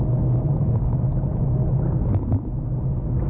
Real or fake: real